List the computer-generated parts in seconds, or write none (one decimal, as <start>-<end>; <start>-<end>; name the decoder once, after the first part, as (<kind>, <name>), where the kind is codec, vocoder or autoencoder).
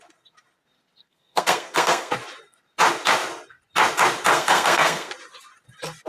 1.0-2.1 (codec, SNAC); 4.3-5.1